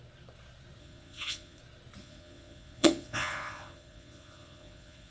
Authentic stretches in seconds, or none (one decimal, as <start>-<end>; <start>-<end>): 0.0-0.8; 1.6-2.0